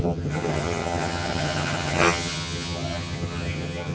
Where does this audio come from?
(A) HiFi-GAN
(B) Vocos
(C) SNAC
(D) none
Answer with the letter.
A